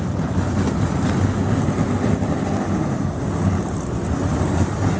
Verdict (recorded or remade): recorded